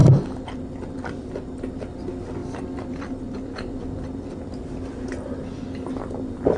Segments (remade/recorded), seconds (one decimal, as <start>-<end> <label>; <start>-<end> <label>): 0.0-1.8 remade; 1.8-2.4 recorded; 2.4-6.6 remade